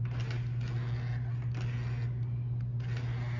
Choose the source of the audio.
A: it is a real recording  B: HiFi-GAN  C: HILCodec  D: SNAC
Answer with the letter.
A